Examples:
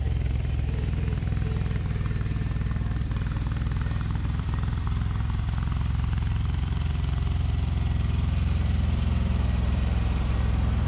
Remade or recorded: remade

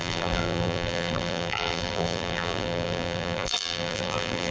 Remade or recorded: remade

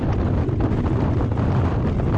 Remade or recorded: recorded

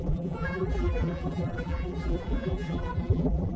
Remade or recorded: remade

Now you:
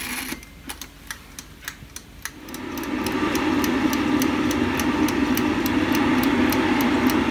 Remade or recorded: recorded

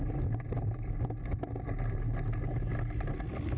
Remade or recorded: recorded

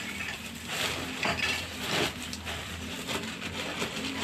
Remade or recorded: remade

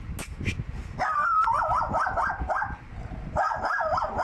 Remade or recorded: recorded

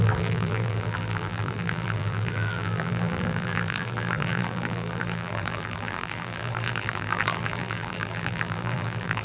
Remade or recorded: remade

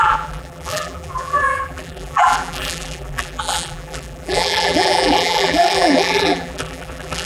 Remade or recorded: remade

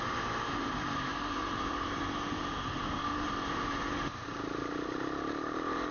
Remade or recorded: remade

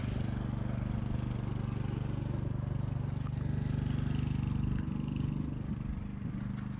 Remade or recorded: recorded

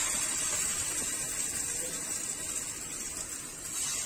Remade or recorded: recorded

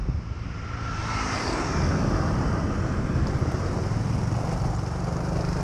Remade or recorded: remade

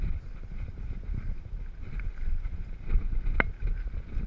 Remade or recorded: recorded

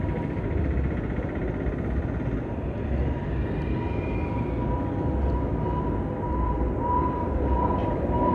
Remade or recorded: recorded